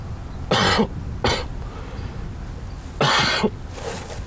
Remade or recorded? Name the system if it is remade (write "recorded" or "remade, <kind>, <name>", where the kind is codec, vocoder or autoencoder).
recorded